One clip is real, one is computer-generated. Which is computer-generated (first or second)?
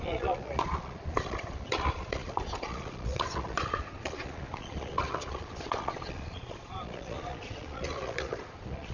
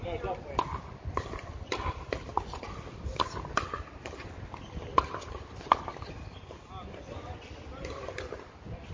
first